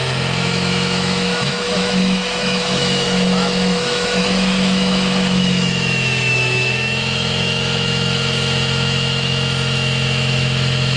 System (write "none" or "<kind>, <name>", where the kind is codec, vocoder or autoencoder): autoencoder, DAC-VAE